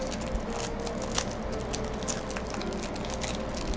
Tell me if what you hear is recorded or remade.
recorded